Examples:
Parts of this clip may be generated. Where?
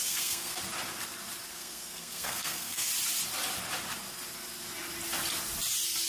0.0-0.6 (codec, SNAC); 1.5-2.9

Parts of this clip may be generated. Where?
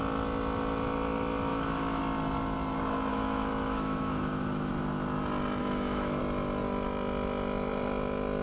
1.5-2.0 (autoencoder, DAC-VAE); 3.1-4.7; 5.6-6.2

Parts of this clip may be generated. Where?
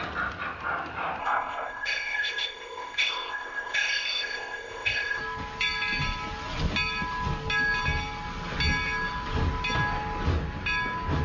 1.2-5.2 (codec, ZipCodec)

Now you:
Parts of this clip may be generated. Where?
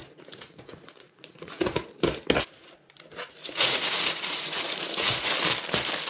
0.0-1.9 (vocoder, Vocos); 3.4-5.3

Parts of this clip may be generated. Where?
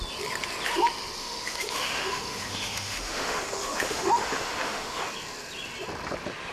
1.2-5.0 (autoencoder, DAC-VAE)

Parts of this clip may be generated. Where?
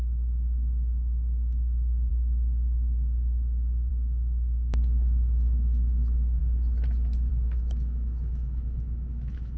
0.0-2.1 (autoencoder, DAC-VAE); 3.9-6.4; 7.3-9.6